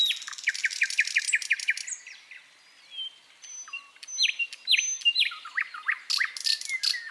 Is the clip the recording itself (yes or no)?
yes